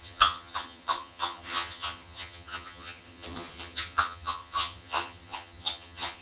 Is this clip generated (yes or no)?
yes